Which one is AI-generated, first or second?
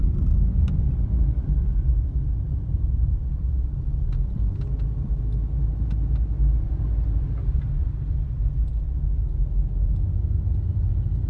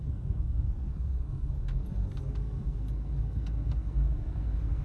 second